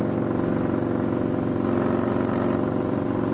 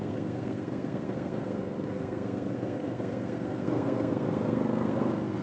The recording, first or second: first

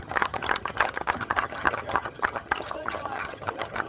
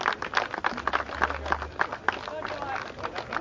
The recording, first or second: second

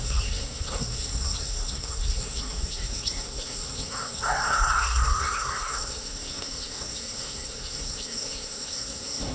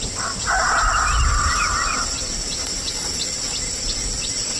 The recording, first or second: second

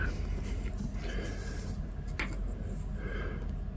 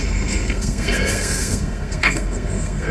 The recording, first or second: first